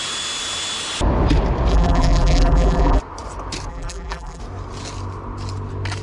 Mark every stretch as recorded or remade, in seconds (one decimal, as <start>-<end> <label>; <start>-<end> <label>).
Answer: 0.0-1.7 recorded; 1.7-3.0 remade; 3.0-3.7 recorded; 3.7-4.4 remade; 4.4-6.0 recorded